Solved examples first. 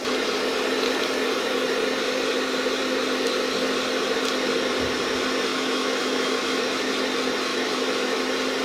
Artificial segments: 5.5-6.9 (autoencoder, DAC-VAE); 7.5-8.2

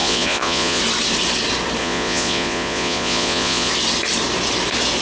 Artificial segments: 0.0-0.8 (vocoder, Vocos); 1.8-3.7

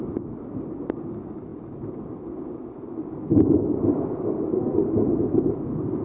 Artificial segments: none

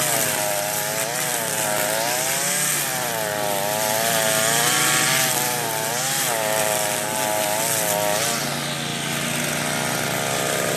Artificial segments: none

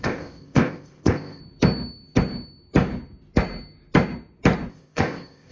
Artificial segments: 0.0-1.4 (codec, ZipCodec); 4.7-5.5

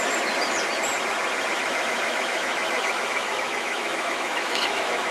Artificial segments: 1.6-5.1 (autoencoder, DAC-VAE)

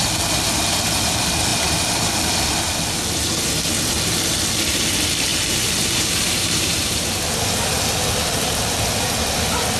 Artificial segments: 5.3-7.2 (vocoder, BigVGAN v2)